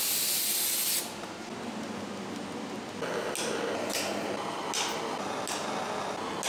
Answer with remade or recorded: recorded